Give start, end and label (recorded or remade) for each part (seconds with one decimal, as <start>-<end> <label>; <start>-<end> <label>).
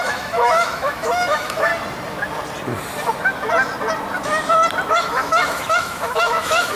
0.0-1.7 remade; 1.7-4.9 recorded; 4.9-6.8 remade